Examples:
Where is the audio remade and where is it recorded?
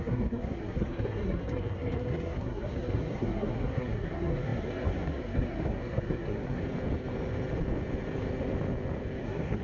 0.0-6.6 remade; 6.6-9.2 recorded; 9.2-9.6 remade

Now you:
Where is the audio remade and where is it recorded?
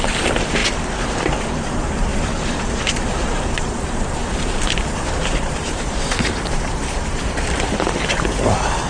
0.0-0.6 remade; 0.6-1.4 recorded; 1.4-8.9 remade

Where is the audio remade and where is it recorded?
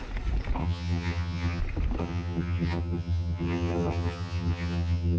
0.0-0.6 recorded; 0.6-1.6 remade; 1.6-2.0 recorded; 2.0-5.2 remade